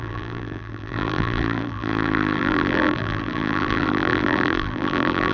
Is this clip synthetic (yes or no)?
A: yes